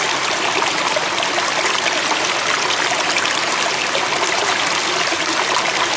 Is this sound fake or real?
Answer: real